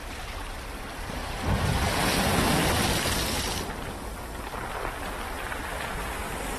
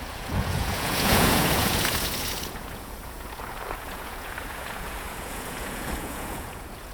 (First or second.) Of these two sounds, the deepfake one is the second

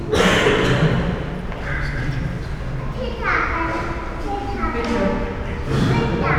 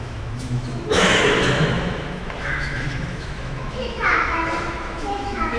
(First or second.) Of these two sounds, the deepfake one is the second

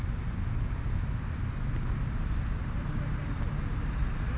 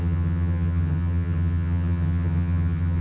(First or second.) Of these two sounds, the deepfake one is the second